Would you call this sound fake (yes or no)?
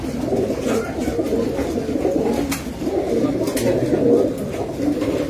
no